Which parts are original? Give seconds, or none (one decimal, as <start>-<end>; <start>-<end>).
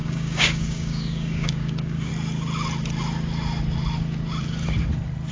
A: 2.1-5.3